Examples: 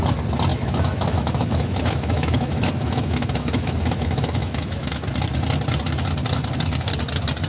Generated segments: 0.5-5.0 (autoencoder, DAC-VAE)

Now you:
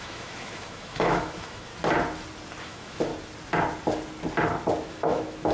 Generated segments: 0.0-1.7 (autoencoder, DAC-VAE); 2.6-3.1; 4.9-5.5

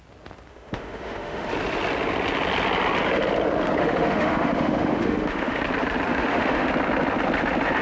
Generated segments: 0.5-1.5 (autoencoder, DAC-VAE); 3.8-5.6; 6.1-6.7

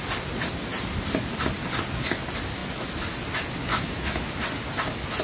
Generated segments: 3.7-4.3 (autoencoder, DAC-VAE)